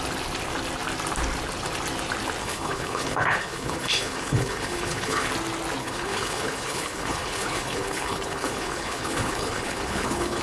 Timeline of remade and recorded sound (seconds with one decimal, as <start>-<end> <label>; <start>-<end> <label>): 0.0-2.4 recorded; 2.4-5.3 remade; 5.3-5.8 recorded; 5.8-10.4 remade